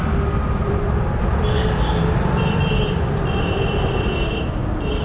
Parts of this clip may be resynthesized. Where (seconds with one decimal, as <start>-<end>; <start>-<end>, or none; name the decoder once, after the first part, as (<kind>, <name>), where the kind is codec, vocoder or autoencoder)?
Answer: 0.4-3.4 (vocoder, BigVGAN v2)